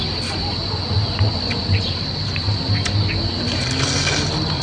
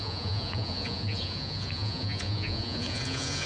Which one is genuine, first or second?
first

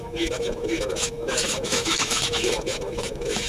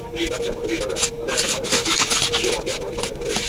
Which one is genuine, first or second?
second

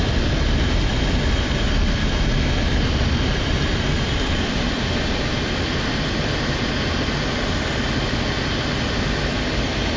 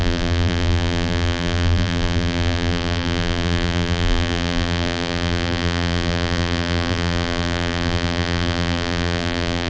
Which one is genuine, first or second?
first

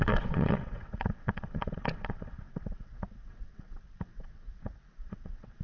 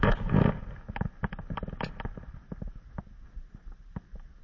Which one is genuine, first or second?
second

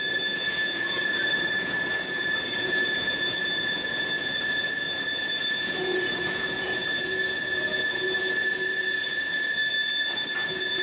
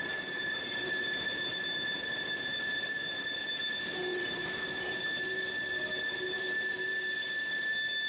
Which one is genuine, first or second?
second